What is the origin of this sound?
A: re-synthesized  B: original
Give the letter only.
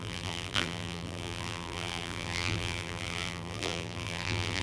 A